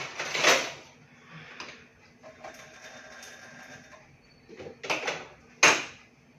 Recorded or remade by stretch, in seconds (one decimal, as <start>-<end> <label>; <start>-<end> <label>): 0.0-6.4 recorded